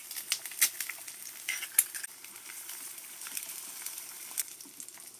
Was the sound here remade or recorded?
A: recorded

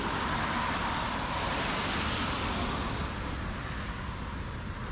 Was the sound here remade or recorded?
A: recorded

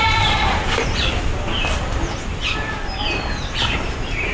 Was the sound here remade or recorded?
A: remade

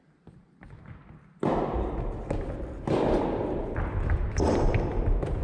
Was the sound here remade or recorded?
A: recorded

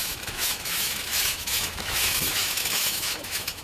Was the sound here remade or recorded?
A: remade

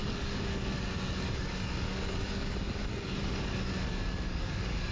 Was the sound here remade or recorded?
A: remade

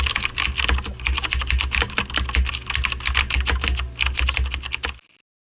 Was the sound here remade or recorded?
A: recorded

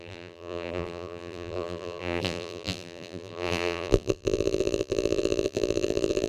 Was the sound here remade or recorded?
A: remade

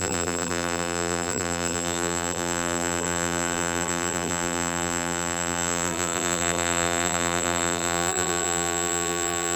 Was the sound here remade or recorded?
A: remade